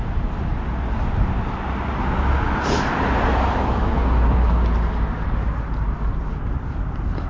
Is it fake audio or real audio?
real